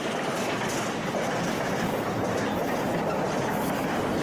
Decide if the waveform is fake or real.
real